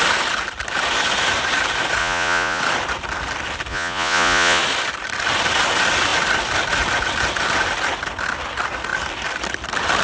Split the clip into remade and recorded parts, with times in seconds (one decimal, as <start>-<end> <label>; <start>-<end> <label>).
0.0-2.0 recorded; 2.0-2.6 remade; 2.6-3.7 recorded; 3.7-4.6 remade; 4.6-10.0 recorded